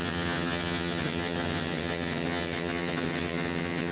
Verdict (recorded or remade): remade